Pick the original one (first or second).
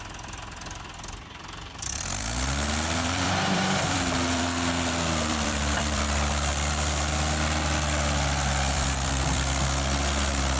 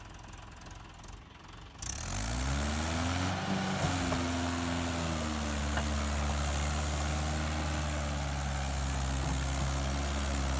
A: second